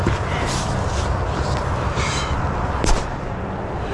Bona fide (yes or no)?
no